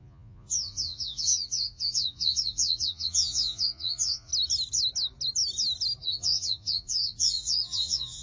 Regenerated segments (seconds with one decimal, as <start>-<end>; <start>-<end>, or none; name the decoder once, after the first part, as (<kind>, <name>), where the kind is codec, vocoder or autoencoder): 0.0-4.3 (vocoder, Vocos); 6.0-8.2